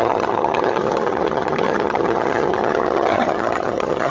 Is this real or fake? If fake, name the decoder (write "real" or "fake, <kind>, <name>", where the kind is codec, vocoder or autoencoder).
fake, vocoder, HiFi-GAN